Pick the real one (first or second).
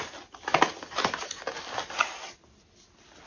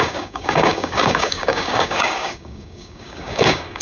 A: first